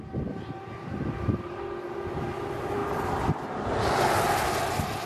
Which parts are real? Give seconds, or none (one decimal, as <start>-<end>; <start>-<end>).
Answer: 0.0-5.1